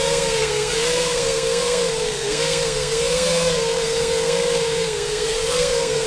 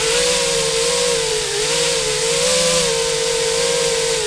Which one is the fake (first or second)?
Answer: first